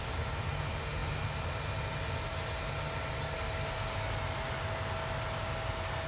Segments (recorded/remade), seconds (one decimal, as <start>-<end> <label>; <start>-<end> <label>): 0.0-6.1 recorded